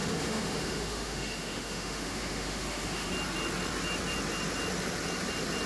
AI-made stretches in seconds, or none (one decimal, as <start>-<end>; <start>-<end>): 0.0-3.1